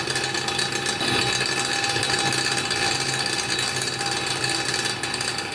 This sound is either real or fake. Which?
real